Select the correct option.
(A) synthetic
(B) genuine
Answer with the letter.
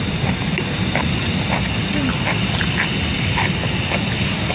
B